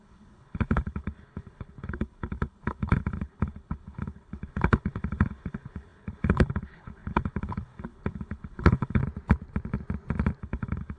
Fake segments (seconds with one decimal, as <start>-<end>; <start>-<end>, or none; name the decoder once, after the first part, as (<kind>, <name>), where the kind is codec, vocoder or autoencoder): 0.0-9.0 (codec, HILCodec); 10.4-11.0